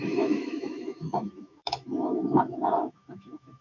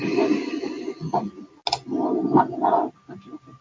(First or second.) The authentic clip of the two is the second